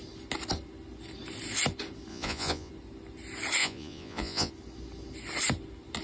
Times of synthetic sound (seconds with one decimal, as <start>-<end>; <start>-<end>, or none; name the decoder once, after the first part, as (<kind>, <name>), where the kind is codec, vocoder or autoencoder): 2.1-2.7 (vocoder, Vocos); 3.6-4.5